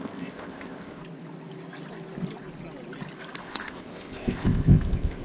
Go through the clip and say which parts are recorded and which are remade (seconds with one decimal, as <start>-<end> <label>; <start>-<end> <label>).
0.0-1.0 remade; 1.0-3.4 recorded; 3.4-5.2 remade